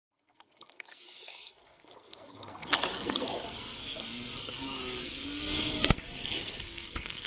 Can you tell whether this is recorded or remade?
remade